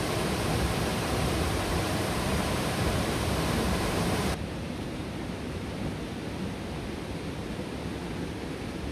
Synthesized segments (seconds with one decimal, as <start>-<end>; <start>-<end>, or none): 0.9-5.1